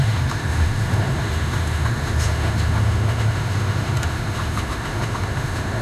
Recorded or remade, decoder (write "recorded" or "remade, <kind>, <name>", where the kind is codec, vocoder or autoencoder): remade, autoencoder, DAC-VAE